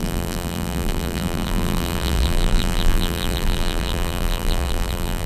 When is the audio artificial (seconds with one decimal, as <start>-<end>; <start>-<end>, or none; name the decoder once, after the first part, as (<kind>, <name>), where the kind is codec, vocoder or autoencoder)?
0.0-5.3 (vocoder, BigVGAN v2)